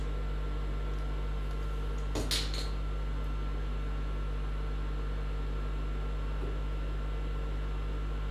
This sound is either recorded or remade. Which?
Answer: recorded